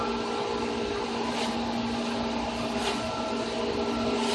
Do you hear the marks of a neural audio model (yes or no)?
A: no